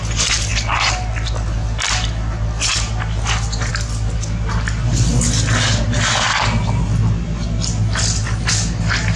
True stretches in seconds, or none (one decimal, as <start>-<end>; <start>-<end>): 0.0-9.2